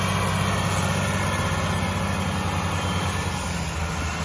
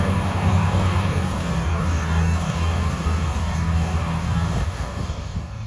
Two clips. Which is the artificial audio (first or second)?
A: second